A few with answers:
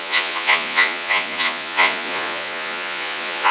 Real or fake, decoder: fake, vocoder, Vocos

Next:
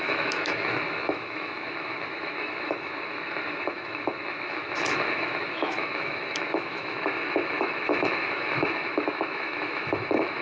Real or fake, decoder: fake, autoencoder, DAC-VAE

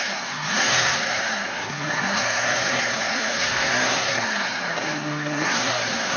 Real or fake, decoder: fake, codec, SNAC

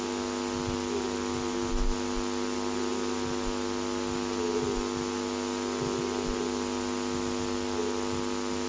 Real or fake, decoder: real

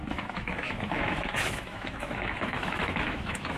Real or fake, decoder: fake, autoencoder, DAC-VAE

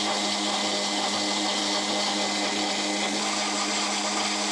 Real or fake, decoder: real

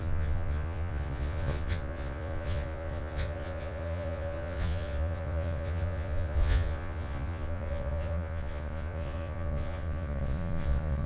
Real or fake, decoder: fake, vocoder, Vocos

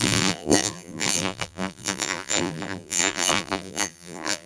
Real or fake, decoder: fake, vocoder, BigVGAN v2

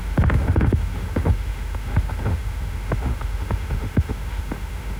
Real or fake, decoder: fake, autoencoder, DAC-VAE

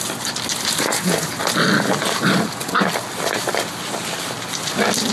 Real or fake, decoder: real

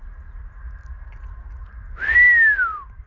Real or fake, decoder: real